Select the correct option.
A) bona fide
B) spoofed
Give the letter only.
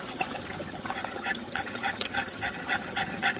B